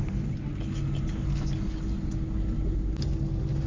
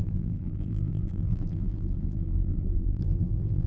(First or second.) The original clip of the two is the first